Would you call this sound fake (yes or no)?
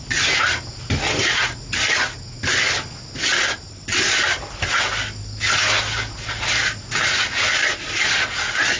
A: no